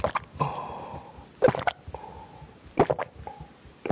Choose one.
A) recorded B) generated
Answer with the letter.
A